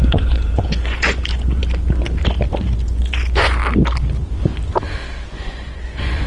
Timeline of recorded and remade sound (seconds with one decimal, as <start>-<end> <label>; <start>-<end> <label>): 0.0-1.6 remade; 1.6-2.8 recorded; 2.8-3.6 remade; 3.6-5.3 recorded; 5.3-6.3 remade